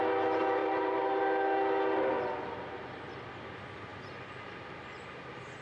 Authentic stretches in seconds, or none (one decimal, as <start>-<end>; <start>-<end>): 0.0-0.6; 1.2-5.6